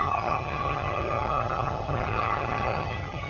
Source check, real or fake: fake